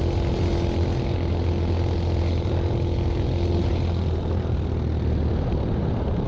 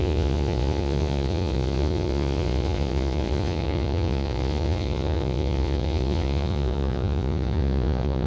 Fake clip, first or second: second